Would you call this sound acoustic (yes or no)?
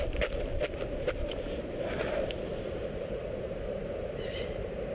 no